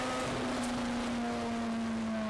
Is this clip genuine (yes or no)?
yes